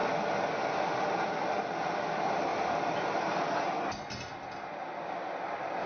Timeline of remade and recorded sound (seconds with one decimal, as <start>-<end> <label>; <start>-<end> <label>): 0.0-5.9 recorded